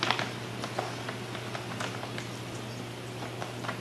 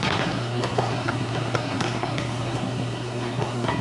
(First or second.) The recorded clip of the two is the first